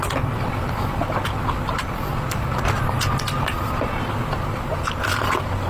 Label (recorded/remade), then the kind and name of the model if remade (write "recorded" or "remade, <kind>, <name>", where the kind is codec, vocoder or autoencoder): recorded